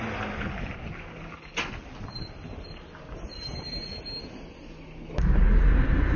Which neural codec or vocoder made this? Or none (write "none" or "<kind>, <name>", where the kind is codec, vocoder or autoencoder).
none